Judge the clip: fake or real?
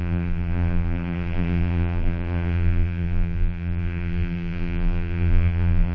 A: fake